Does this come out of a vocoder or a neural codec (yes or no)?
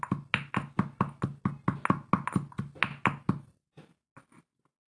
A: no